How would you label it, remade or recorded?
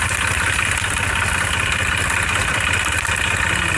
recorded